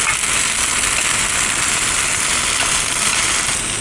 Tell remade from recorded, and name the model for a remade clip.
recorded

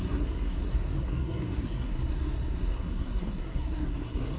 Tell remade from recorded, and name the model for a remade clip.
remade, codec, SNAC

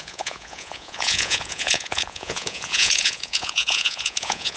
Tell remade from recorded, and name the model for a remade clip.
remade, vocoder, Vocos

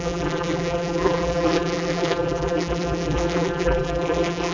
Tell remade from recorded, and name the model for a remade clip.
remade, vocoder, BigVGAN v2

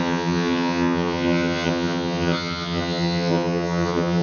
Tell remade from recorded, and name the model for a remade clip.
remade, vocoder, HiFi-GAN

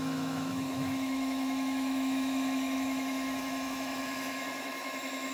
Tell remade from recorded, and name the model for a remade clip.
remade, autoencoder, DAC-VAE